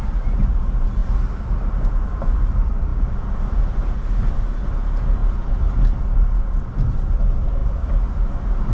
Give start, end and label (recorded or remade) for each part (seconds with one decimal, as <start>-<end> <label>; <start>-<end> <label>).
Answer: 0.0-8.7 recorded